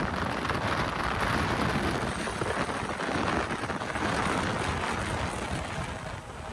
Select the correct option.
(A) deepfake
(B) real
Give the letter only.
B